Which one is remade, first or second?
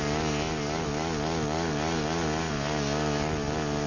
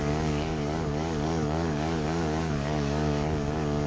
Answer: second